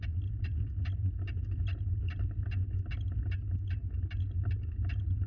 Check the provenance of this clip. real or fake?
real